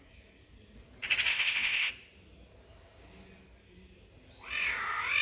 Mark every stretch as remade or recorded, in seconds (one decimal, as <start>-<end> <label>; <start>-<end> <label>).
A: 0.0-1.3 recorded; 1.3-1.9 remade; 1.9-5.2 recorded